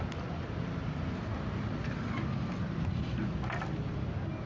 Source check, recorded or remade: recorded